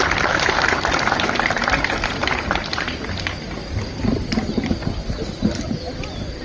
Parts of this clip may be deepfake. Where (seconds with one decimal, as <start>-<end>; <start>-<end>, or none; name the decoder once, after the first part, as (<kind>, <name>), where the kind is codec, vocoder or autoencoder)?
none